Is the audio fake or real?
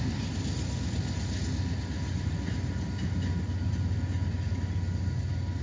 real